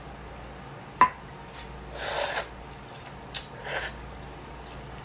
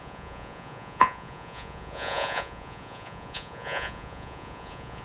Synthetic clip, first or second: second